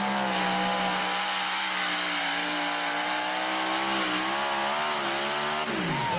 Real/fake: real